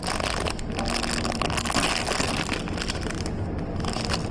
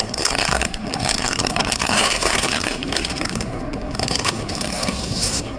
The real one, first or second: first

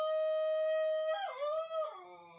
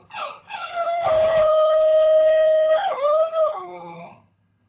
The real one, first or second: first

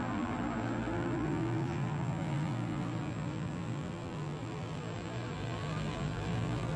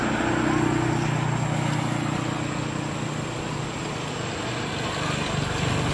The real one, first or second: second